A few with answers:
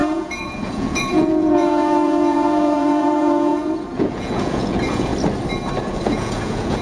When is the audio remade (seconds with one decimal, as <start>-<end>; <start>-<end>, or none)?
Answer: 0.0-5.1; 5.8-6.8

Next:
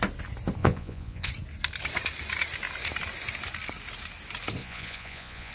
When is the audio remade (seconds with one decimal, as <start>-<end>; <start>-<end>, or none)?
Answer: 0.6-1.3; 4.6-5.5

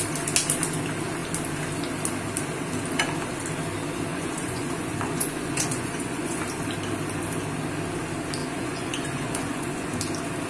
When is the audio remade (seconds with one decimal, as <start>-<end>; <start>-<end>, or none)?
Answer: 4.1-6.4; 8.4-10.0